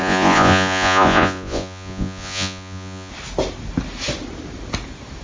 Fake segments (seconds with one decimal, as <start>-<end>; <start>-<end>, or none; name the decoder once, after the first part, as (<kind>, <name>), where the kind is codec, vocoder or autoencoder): 0.0-3.1 (vocoder, Vocos)